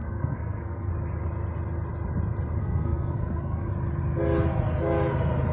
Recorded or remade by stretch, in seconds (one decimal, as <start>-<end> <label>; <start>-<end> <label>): 0.0-0.9 remade; 0.9-2.6 recorded; 2.6-3.7 remade; 3.7-5.5 recorded

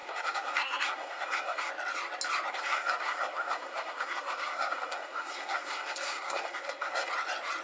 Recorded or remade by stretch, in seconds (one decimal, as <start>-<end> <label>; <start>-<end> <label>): 0.0-1.7 remade; 1.7-2.5 recorded; 2.5-7.1 remade; 7.1-7.6 recorded

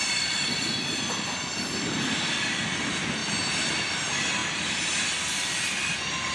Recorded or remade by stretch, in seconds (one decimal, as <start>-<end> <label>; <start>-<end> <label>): 0.0-6.3 recorded